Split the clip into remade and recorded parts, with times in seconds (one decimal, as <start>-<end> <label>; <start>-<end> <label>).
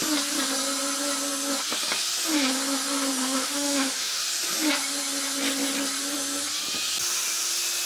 0.0-3.2 recorded; 3.2-4.2 remade; 4.2-7.9 recorded